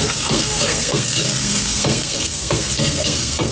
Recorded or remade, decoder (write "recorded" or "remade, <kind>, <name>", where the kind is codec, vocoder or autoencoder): remade, codec, SNAC